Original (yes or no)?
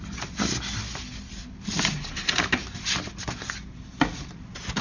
yes